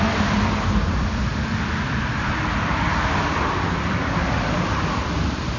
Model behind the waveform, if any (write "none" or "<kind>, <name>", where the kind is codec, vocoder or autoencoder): none